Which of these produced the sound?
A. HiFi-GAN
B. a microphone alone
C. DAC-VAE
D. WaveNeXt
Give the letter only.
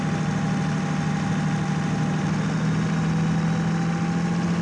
B